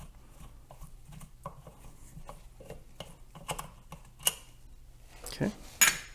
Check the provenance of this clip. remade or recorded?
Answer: recorded